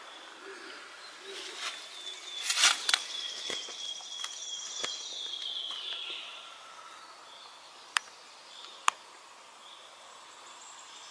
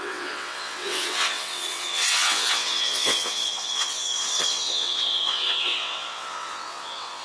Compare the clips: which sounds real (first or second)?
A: first